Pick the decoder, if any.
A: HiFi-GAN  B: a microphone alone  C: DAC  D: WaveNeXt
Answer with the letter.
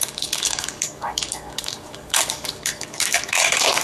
C